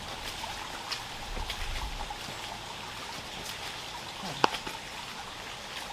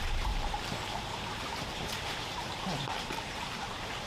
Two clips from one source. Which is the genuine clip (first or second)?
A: first